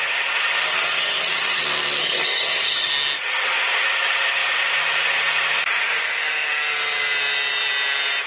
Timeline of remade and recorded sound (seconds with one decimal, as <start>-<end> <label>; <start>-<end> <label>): 0.0-0.7 recorded; 0.7-1.6 remade; 1.6-2.0 recorded; 2.0-2.9 remade; 2.9-8.3 recorded